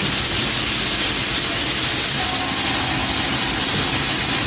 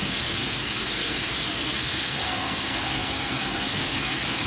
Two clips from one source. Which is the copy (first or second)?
second